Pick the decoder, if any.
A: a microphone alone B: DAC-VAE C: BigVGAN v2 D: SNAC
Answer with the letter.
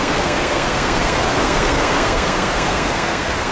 D